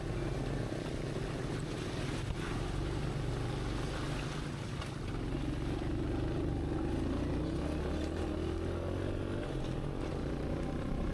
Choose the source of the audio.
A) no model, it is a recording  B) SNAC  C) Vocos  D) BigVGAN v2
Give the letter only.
A